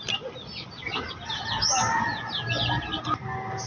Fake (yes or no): no